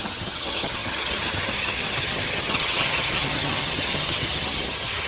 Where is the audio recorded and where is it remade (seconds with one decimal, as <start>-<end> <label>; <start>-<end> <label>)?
0.0-5.1 remade